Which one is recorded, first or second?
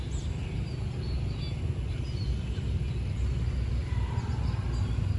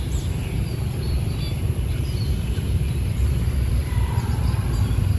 first